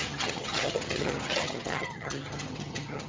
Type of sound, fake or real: fake